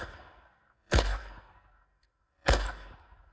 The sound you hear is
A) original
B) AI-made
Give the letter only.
B